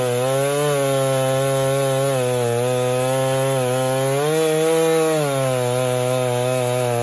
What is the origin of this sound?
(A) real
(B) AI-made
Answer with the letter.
A